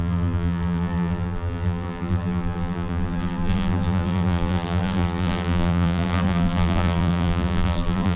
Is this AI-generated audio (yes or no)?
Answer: yes